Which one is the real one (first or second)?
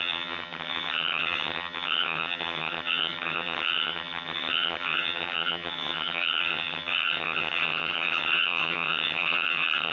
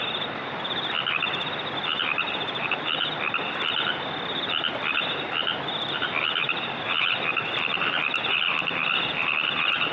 second